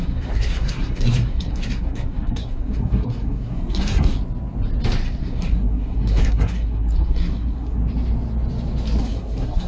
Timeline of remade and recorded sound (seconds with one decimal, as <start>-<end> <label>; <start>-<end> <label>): 0.0-4.2 remade; 4.2-5.2 recorded; 5.2-7.8 remade; 7.8-9.0 recorded; 9.0-9.7 remade